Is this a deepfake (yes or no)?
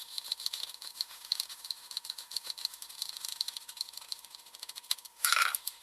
yes